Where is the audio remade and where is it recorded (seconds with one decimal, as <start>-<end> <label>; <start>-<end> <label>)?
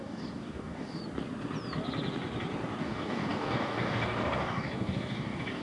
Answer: 0.0-1.0 remade; 1.0-2.8 recorded; 2.8-5.6 remade